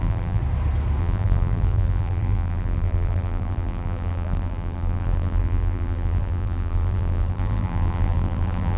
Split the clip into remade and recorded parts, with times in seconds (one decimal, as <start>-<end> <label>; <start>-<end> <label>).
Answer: 0.0-0.4 remade; 0.4-1.0 recorded; 1.0-8.8 remade